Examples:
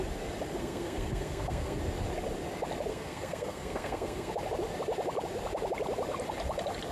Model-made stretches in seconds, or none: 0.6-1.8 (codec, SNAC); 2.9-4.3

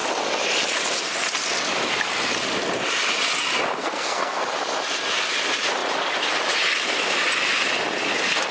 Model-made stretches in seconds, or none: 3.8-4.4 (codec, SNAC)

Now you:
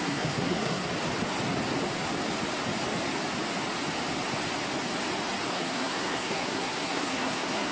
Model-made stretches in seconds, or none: 0.0-0.9 (codec, SNAC); 5.5-7.7